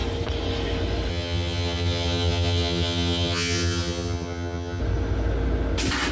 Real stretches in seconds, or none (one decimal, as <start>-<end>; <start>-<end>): 0.0-1.1; 4.8-6.1

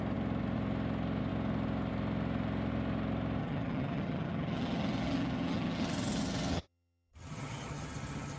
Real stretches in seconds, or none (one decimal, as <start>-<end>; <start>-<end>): 0.0-3.4

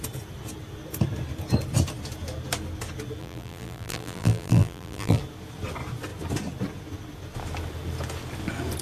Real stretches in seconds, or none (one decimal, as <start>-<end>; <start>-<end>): 0.0-3.2; 5.2-8.8